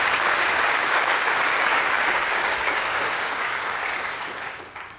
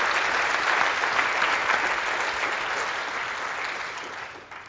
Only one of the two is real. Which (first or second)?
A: second